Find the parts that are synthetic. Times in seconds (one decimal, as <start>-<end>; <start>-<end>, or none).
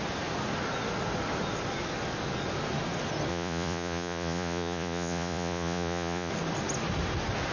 3.3-6.3